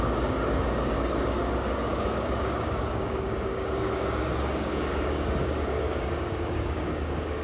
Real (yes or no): no